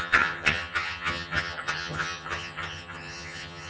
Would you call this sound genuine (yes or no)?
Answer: no